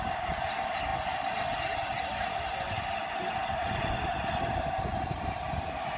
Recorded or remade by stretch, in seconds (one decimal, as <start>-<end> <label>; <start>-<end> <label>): 0.0-6.0 recorded

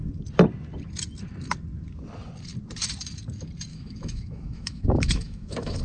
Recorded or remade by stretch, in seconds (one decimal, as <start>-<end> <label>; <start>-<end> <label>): 0.0-3.7 recorded; 3.7-5.8 remade

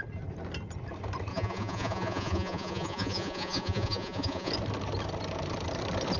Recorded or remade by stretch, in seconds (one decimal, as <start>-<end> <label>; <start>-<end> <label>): 0.0-1.3 recorded; 1.3-4.5 remade; 4.5-6.2 recorded

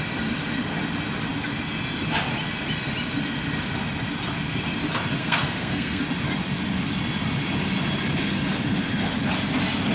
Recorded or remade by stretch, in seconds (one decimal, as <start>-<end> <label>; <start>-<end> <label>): 0.0-5.2 recorded; 5.2-6.0 remade; 6.0-9.9 recorded

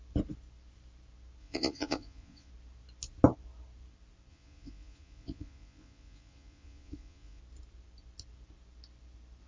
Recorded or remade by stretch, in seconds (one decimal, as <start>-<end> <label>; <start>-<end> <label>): 0.0-1.4 recorded; 1.4-2.5 remade; 2.5-4.3 recorded; 4.3-7.4 remade; 7.4-9.5 recorded